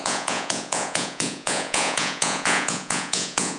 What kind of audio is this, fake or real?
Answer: fake